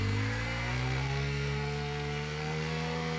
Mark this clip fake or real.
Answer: fake